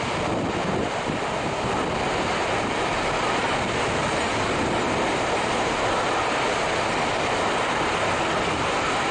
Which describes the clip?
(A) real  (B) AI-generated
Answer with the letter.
A